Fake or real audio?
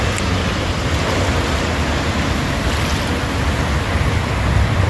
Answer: real